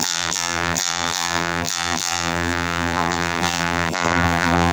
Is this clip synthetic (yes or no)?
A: yes